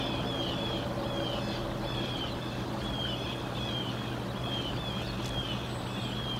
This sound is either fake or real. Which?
real